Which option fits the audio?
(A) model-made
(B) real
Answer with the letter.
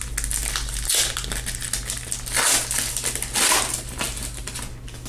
B